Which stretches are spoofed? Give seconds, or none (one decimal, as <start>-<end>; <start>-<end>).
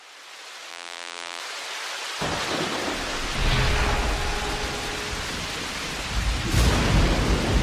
0.7-1.4